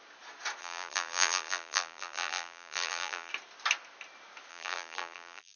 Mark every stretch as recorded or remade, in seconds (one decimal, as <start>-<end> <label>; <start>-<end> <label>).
0.0-0.6 recorded; 0.6-3.3 remade; 3.3-4.5 recorded; 4.5-5.6 remade